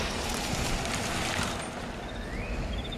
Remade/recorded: recorded